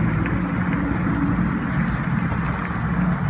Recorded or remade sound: recorded